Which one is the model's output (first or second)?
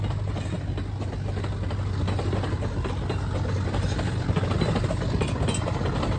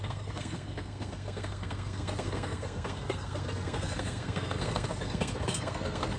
second